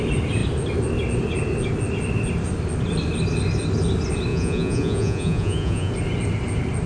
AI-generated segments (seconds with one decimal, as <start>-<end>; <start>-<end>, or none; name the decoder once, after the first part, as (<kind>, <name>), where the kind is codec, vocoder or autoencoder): 4.3-5.9 (vocoder, Vocos)